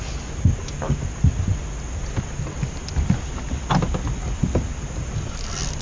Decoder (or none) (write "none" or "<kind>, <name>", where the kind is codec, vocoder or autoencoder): none